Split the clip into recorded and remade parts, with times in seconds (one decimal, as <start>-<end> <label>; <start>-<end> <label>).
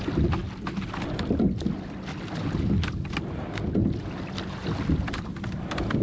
0.0-3.8 recorded; 3.8-6.0 remade